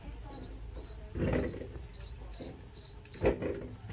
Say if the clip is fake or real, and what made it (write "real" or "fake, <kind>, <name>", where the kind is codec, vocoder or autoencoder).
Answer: real